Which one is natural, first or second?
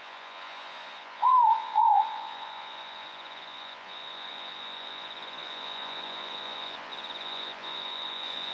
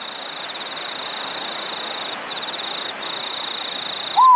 second